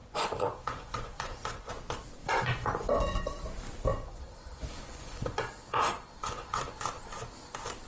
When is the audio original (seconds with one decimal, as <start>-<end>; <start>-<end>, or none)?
1.7-2.2; 3.3-3.9; 6.8-7.9